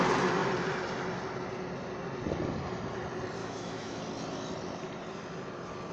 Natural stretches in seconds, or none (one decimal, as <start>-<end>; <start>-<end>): 0.0-3.4; 4.0-5.9